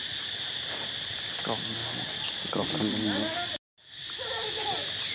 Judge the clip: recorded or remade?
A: recorded